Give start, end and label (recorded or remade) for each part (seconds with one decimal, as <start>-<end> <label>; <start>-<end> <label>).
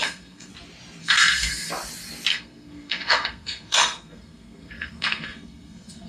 0.0-0.5 remade; 0.5-1.0 recorded; 1.0-1.7 remade; 1.7-2.3 recorded; 2.3-6.1 remade